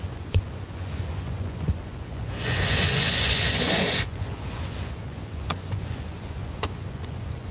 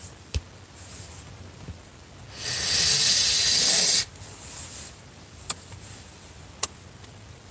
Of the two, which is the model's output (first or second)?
first